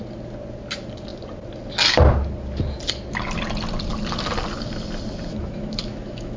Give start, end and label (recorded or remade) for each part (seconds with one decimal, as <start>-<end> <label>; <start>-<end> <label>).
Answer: 0.0-5.3 recorded; 5.3-6.4 remade